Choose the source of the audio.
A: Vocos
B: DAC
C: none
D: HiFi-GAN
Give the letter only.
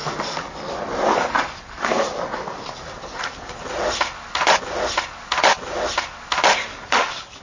C